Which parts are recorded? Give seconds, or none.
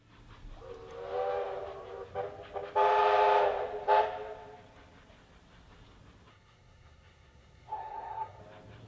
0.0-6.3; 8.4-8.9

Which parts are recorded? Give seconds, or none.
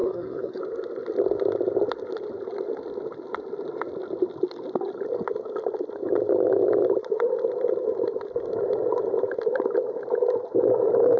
0.6-11.2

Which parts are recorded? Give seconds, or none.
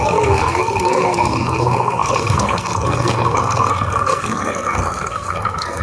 none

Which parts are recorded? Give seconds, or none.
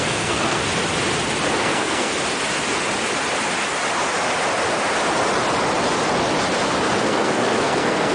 0.6-1.5; 2.1-7.0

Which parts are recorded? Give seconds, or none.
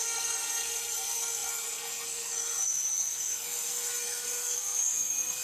none